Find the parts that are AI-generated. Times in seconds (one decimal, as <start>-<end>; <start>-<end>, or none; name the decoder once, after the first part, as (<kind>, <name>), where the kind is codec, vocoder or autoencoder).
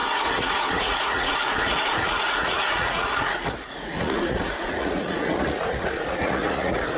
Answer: 0.0-7.0 (vocoder, Vocos)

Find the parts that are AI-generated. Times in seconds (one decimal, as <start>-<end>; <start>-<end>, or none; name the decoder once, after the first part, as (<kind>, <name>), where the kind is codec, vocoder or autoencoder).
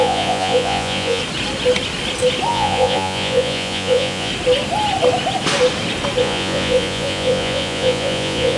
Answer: 0.0-1.2 (vocoder, Vocos); 2.5-4.3; 6.2-8.6